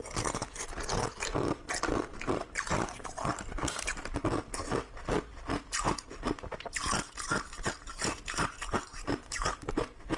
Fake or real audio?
real